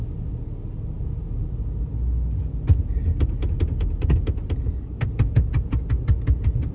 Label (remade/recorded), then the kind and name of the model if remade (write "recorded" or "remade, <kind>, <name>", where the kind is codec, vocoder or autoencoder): recorded